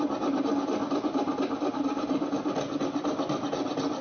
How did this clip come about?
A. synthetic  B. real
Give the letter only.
B